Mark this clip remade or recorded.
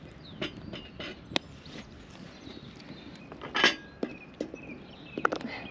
recorded